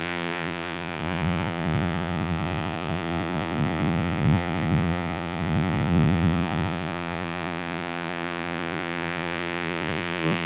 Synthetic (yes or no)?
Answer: yes